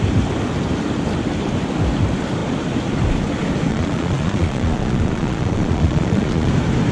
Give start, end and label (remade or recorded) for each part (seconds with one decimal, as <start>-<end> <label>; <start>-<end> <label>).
0.0-3.7 recorded; 3.7-6.5 remade; 6.5-6.9 recorded

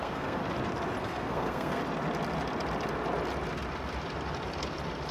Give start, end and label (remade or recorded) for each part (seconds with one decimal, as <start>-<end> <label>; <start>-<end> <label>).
0.0-0.4 remade; 0.4-1.0 recorded; 1.0-1.8 remade; 1.8-5.1 recorded

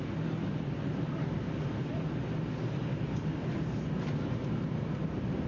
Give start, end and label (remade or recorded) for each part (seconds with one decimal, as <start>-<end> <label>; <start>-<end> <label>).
0.0-5.5 recorded

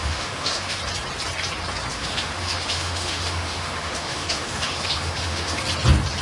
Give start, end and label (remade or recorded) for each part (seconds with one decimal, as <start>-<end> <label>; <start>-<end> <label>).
0.0-0.8 remade; 0.8-1.9 recorded; 1.9-5.6 remade; 5.6-6.2 recorded